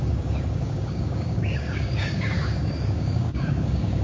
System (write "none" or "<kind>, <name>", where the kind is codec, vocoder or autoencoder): codec, DAC